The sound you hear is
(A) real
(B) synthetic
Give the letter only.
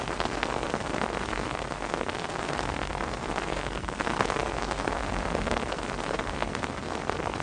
B